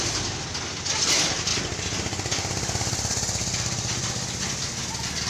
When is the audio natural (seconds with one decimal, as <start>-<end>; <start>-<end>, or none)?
0.0-5.3